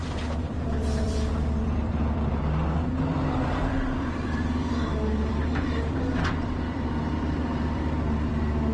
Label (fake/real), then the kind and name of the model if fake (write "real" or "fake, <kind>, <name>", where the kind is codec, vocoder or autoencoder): fake, vocoder, BigVGAN v2